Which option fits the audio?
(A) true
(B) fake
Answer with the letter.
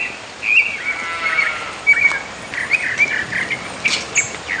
A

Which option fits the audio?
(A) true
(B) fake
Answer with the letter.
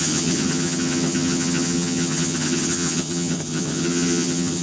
B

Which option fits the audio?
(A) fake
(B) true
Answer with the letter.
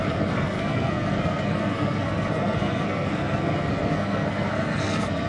A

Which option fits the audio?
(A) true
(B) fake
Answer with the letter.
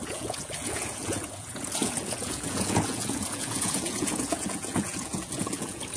B